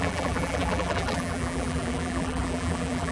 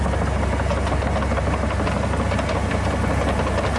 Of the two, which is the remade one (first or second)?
first